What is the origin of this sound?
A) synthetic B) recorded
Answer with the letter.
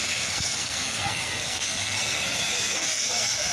A